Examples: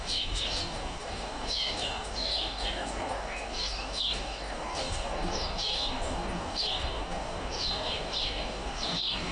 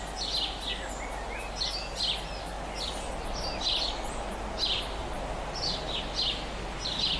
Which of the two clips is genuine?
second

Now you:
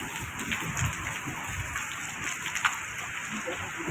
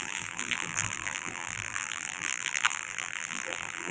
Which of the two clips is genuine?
first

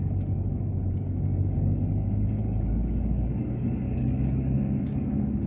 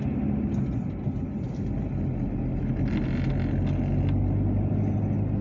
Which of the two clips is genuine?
second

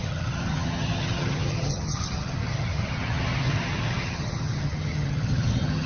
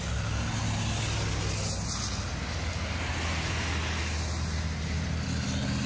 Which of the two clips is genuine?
second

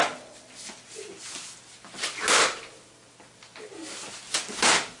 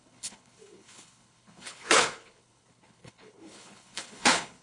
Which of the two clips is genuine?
first